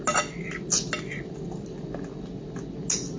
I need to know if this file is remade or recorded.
recorded